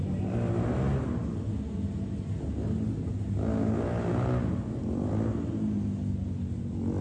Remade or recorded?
recorded